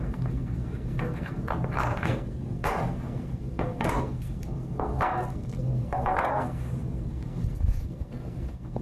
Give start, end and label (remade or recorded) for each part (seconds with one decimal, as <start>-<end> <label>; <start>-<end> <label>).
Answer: 0.0-8.8 remade